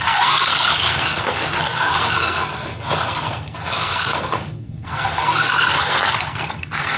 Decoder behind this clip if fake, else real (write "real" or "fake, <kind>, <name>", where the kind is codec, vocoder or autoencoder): fake, codec, SNAC